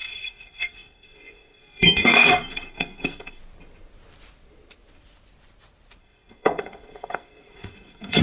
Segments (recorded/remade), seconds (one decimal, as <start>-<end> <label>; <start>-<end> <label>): 0.0-3.4 remade; 3.4-6.0 recorded; 6.0-8.2 remade